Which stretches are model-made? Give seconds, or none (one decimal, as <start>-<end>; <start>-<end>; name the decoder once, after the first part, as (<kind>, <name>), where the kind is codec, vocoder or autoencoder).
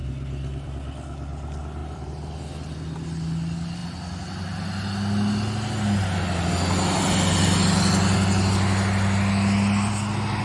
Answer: 0.0-0.7 (vocoder, BigVGAN v2); 1.8-2.3